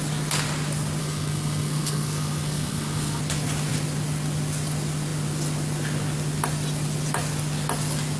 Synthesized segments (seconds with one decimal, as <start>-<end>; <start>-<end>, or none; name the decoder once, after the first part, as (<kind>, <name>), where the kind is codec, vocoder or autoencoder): 1.0-3.2 (codec, SNAC)